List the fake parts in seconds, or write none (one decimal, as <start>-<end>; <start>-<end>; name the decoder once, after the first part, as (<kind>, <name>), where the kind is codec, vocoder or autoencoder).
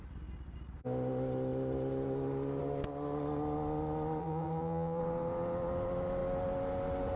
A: 4.2-5.0 (vocoder, BigVGAN v2)